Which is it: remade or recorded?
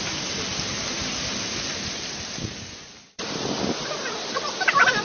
recorded